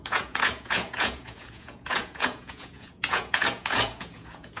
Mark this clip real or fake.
fake